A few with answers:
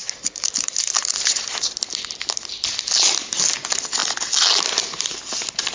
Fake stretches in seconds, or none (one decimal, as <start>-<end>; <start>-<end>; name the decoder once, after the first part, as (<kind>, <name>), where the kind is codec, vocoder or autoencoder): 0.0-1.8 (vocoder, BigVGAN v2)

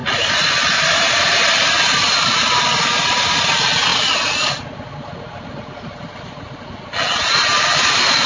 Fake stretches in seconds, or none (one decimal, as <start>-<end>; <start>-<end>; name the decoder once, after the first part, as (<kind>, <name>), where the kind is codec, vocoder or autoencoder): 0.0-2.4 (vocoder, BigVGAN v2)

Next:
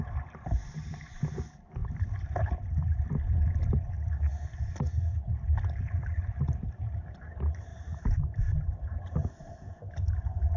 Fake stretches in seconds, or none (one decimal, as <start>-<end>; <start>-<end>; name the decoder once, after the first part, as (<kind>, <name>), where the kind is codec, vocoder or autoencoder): 1.8-5.3 (vocoder, BigVGAN v2); 7.7-10.6

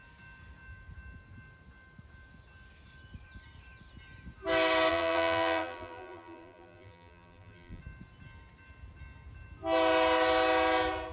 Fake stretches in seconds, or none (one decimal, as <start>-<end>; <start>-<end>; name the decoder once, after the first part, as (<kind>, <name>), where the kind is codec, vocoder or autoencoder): 4.9-7.8 (vocoder, BigVGAN v2)

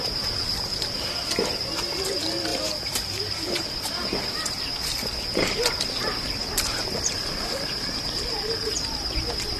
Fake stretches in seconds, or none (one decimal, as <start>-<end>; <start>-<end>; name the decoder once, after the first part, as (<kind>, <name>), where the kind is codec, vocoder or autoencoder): 2.5-3.9 (vocoder, BigVGAN v2)

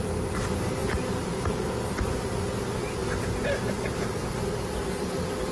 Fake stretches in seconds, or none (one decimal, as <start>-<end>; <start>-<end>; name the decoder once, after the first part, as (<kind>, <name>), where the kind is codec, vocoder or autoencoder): 0.8-1.6 (vocoder, BigVGAN v2)